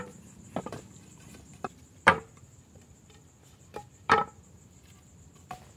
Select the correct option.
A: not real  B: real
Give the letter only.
A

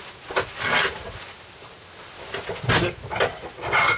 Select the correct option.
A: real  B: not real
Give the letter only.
A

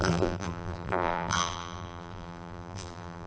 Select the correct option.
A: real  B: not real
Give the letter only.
B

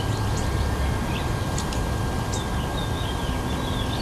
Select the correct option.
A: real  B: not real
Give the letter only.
A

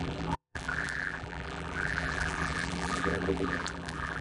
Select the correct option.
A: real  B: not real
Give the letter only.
B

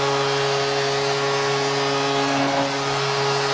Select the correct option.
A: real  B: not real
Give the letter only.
A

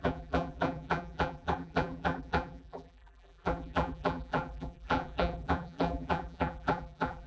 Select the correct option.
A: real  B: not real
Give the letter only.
B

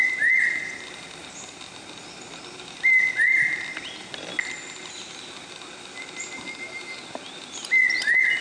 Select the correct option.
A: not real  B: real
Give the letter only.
B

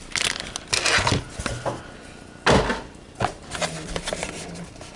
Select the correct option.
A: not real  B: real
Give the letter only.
B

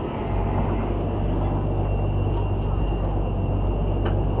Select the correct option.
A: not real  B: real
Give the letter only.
B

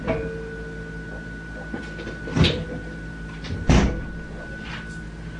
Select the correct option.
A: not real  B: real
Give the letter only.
B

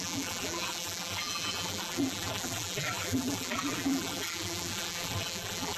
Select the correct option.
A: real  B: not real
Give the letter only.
B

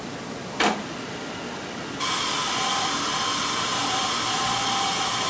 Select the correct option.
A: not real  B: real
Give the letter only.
B